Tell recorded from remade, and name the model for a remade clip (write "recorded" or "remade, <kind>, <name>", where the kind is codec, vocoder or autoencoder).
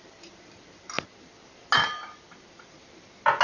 recorded